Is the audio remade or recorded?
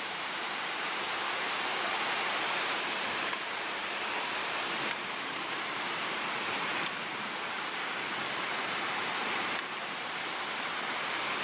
remade